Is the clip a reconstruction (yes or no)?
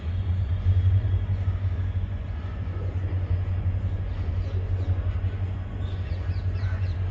yes